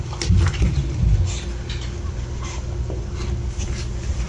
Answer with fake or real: real